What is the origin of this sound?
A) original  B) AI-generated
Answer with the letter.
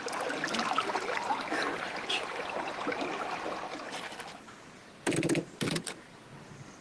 A